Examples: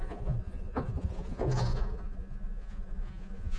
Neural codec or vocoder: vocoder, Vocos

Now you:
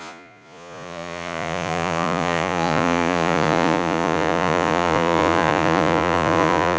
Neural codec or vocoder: vocoder, Vocos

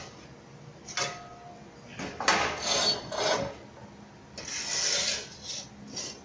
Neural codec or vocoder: none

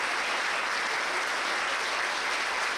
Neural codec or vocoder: none